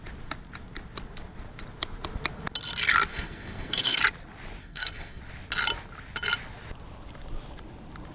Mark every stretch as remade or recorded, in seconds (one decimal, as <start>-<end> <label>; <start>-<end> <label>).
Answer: 0.0-3.1 recorded; 3.1-4.0 remade; 4.0-4.6 recorded; 4.6-5.2 remade; 5.2-8.1 recorded